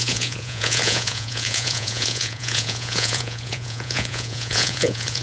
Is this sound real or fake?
fake